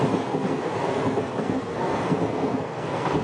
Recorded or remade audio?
remade